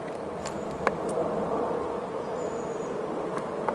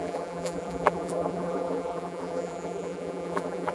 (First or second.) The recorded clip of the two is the first